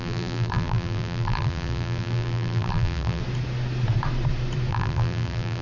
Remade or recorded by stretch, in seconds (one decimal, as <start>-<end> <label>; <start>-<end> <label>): 0.0-3.2 remade; 3.2-4.7 recorded; 4.7-5.6 remade